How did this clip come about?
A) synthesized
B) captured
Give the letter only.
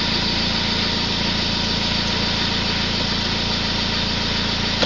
B